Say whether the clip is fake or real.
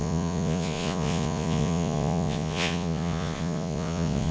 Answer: fake